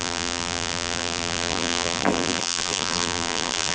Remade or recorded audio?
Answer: remade